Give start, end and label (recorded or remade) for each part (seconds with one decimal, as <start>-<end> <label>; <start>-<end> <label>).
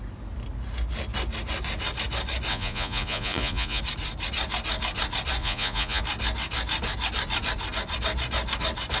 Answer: 0.0-2.5 recorded; 2.5-3.8 remade; 3.8-5.4 recorded; 5.4-6.0 remade; 6.0-9.0 recorded